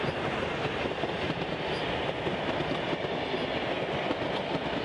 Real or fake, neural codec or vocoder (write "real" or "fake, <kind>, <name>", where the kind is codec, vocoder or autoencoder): real